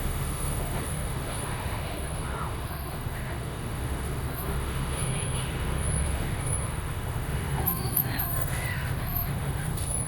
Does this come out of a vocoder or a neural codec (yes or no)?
yes